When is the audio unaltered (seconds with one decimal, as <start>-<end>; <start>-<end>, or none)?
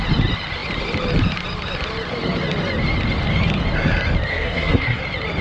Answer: 0.0-4.3; 5.0-5.4